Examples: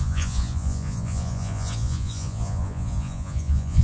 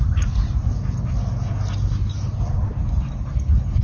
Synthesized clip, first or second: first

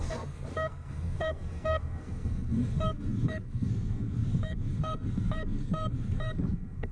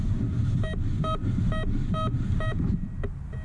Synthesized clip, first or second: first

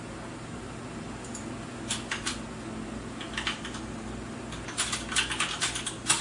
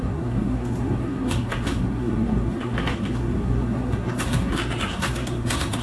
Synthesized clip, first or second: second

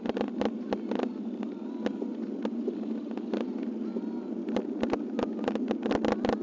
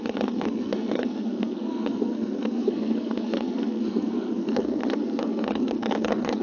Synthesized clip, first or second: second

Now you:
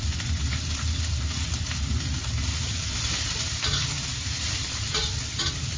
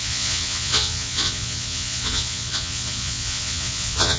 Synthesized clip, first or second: second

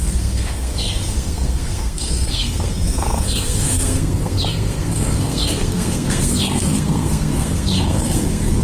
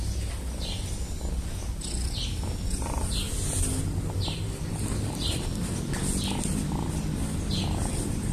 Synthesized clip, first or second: first